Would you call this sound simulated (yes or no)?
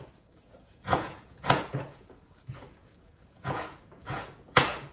yes